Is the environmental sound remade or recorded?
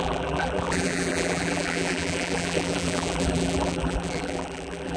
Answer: remade